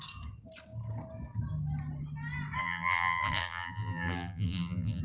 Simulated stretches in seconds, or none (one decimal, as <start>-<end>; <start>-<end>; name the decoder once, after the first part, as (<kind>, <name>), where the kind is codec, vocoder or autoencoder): 2.6-5.0 (vocoder, BigVGAN v2)